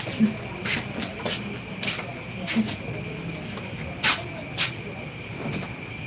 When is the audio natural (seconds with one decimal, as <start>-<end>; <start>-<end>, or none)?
0.0-6.1